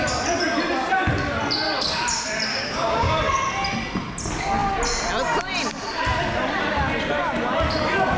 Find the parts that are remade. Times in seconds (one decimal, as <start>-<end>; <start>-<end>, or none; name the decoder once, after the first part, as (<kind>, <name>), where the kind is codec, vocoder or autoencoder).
2.5-3.2 (codec, DAC)